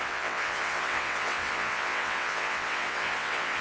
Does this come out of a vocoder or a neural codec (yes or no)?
yes